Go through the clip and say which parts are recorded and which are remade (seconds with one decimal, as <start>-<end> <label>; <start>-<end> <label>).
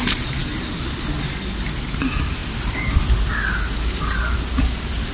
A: 0.0-5.1 recorded